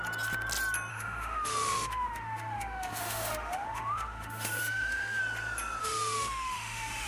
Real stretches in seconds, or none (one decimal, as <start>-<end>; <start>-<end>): 0.0-0.9; 5.2-5.8